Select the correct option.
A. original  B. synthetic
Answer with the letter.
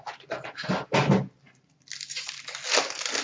A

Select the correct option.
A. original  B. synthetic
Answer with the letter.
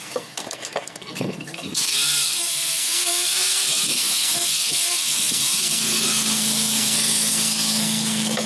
B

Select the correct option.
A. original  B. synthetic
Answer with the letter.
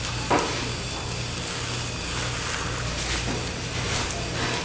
A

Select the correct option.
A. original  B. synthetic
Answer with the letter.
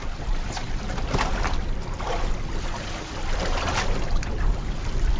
A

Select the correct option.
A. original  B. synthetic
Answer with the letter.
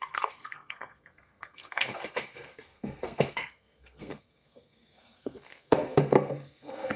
B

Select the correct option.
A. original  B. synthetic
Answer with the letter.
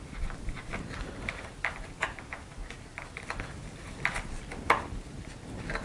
A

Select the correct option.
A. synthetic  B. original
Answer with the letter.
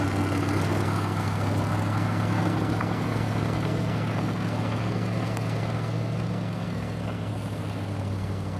A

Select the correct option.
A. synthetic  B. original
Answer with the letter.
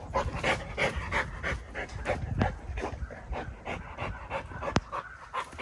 B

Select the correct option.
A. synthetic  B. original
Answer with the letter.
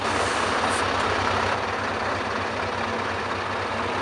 B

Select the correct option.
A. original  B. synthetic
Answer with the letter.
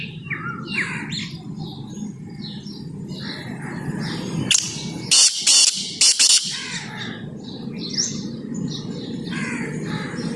A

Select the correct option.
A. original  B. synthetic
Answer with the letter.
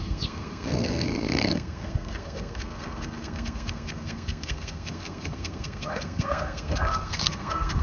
B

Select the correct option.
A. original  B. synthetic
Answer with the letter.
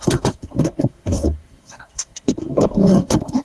B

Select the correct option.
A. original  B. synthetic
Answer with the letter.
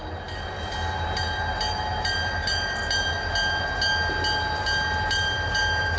A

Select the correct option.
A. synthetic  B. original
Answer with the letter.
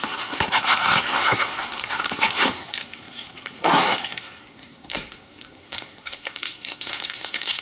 A